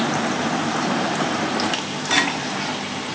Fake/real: real